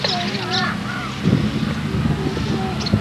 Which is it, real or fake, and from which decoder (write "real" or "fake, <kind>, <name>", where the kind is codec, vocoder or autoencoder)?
real